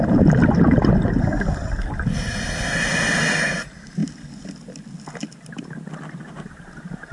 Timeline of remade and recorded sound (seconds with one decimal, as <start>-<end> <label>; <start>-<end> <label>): 0.0-7.1 recorded